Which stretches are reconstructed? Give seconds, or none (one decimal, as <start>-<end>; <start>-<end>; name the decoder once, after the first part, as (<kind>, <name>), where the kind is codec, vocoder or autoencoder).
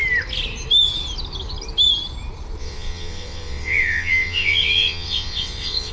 2.6-5.9 (vocoder, WaveNeXt)